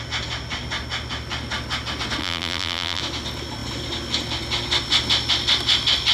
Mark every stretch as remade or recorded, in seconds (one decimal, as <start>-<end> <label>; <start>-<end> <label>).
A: 0.0-2.2 recorded; 2.2-3.0 remade; 3.0-6.1 recorded